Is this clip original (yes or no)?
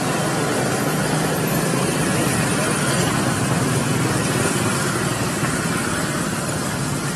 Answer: yes